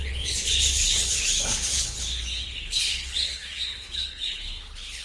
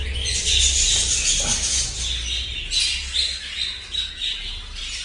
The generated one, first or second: first